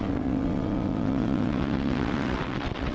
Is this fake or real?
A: fake